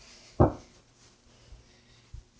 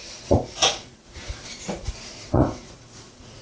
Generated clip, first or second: second